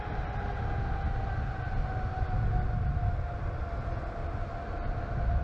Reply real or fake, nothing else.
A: real